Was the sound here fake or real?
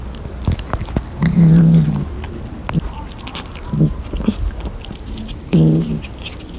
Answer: real